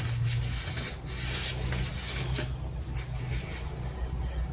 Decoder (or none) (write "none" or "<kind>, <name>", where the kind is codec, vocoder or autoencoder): none